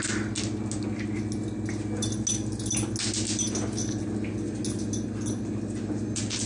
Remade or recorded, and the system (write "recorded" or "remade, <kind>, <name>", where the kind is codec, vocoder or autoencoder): recorded